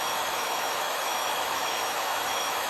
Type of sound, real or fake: fake